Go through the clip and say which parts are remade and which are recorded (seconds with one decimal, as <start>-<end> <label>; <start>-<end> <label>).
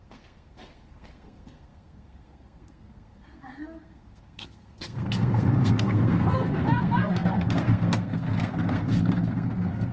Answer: 0.0-9.9 remade